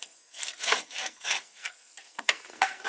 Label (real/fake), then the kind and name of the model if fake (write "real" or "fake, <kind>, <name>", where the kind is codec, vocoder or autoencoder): fake, codec, SNAC